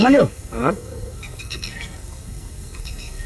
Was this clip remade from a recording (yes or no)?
yes